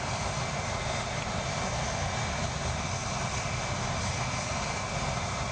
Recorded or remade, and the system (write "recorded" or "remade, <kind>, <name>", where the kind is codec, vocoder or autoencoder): recorded